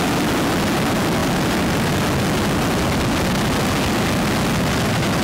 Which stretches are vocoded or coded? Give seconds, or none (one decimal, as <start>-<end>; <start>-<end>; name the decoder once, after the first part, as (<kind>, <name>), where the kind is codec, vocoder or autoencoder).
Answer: none